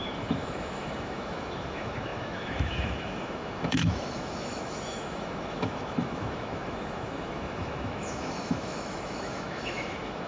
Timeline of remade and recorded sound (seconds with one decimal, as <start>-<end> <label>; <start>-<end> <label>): 0.0-10.3 remade